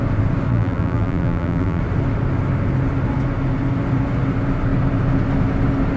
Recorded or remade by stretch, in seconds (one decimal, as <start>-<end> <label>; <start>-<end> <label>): 0.0-0.5 recorded; 0.5-1.8 remade; 1.8-6.0 recorded